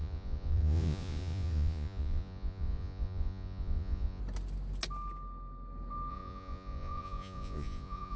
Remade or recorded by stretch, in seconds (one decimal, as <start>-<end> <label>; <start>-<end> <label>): 0.0-4.2 remade; 4.2-6.1 recorded; 6.1-8.2 remade